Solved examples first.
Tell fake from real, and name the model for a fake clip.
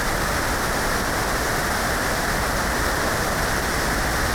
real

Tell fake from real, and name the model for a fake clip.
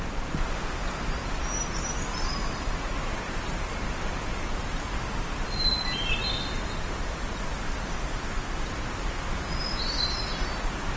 real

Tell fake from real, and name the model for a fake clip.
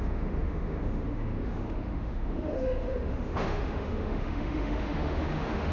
fake, autoencoder, DAC-VAE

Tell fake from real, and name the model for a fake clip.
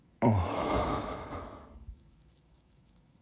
fake, autoencoder, DAC-VAE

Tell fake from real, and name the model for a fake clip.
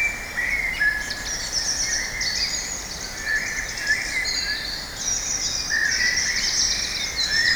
real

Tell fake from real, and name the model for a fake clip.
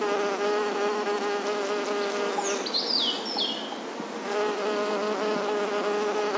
real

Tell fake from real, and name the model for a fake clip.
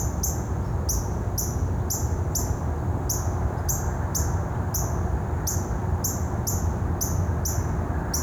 real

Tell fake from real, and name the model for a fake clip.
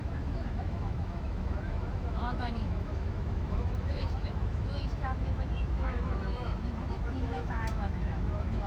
fake, autoencoder, DAC-VAE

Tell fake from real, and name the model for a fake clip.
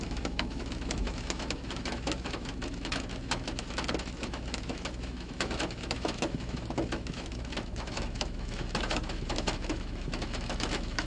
fake, autoencoder, DAC-VAE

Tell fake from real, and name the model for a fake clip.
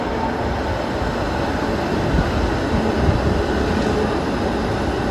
real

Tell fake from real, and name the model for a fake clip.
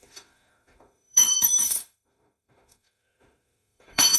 fake, autoencoder, DAC-VAE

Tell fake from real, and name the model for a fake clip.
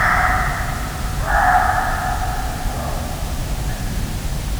real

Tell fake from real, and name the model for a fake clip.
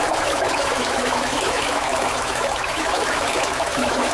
fake, autoencoder, DAC-VAE